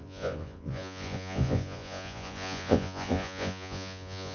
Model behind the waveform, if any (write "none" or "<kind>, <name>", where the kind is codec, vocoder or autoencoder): vocoder, Vocos